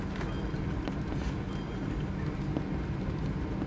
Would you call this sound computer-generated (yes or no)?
no